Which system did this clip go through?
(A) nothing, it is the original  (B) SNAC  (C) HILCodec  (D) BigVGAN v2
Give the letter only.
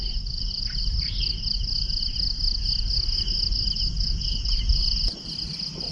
A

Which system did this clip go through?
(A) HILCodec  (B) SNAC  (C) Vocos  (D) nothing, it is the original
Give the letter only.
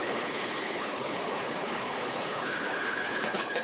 A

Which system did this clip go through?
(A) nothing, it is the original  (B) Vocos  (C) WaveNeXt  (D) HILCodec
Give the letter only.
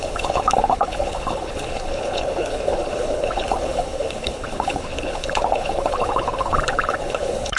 D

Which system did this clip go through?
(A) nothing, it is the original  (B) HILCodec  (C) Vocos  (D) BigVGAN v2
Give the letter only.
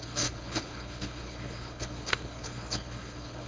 B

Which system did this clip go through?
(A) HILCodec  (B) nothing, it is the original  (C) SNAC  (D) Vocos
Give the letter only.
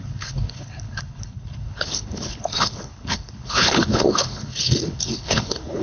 A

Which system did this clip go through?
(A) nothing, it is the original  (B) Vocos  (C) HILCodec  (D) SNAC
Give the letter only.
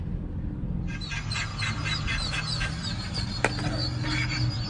A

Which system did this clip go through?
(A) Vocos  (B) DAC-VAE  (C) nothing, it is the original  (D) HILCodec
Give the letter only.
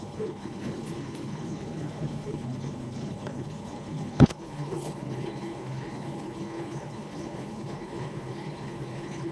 D